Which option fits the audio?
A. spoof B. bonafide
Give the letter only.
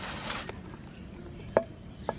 B